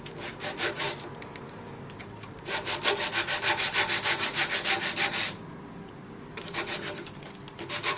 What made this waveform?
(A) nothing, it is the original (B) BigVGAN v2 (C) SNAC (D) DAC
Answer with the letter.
A